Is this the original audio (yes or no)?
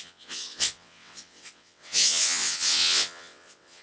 no